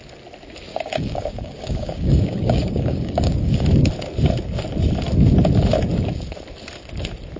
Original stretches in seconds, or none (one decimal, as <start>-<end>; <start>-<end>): 0.0-0.7; 3.6-7.4